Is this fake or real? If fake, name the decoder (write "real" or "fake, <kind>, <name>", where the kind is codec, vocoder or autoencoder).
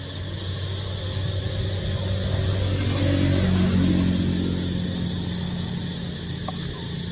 real